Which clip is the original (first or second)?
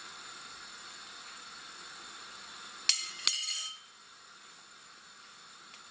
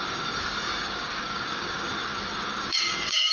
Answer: first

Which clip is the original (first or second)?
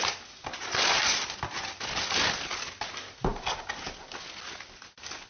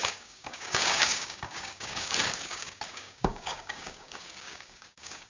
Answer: first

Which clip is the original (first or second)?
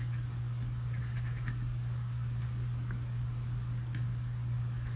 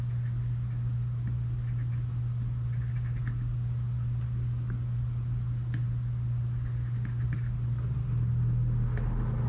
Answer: second